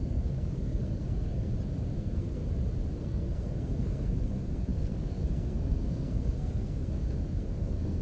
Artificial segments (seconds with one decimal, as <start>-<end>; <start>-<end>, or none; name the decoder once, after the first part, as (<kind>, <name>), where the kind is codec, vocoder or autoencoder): 0.0-1.5 (codec, SNAC); 2.0-2.4; 3.0-8.0